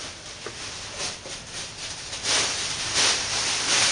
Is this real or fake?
real